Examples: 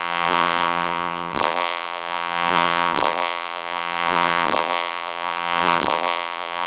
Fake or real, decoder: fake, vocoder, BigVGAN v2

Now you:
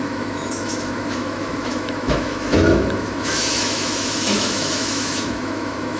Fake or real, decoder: fake, autoencoder, DAC-VAE